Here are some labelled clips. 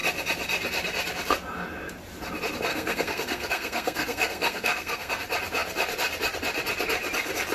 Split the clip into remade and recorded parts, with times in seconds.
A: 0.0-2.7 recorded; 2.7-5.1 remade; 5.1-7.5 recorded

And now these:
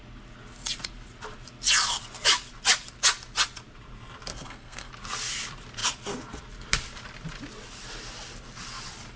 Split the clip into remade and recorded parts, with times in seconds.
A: 0.0-4.3 recorded; 4.3-4.9 remade; 4.9-9.2 recorded

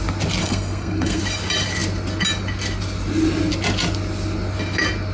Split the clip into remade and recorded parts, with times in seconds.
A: 0.0-0.4 recorded; 0.4-1.2 remade; 1.2-5.1 recorded

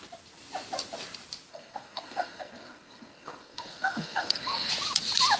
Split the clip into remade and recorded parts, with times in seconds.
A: 0.0-1.5 recorded; 1.5-4.7 remade; 4.7-5.4 recorded

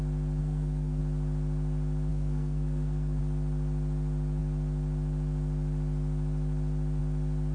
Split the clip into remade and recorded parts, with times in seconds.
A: 0.0-0.4 recorded; 0.4-1.0 remade; 1.0-2.1 recorded; 2.1-3.2 remade; 3.2-7.5 recorded

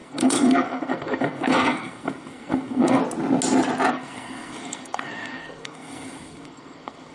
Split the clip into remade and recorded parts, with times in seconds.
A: 0.0-3.0 remade; 3.0-3.9 recorded; 3.9-7.1 remade

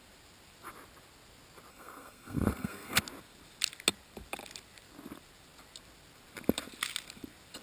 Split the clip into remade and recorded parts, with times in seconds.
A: 0.0-1.7 recorded; 1.7-3.0 remade; 3.0-7.6 recorded